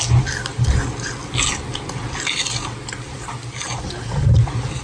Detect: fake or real real